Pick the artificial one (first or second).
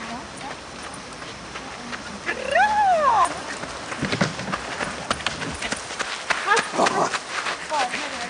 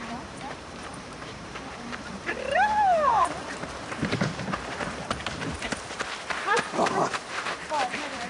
second